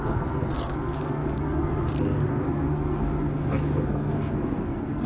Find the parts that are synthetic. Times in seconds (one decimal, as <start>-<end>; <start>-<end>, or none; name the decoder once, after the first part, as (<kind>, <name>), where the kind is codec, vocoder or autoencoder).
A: 0.0-5.1 (codec, SNAC)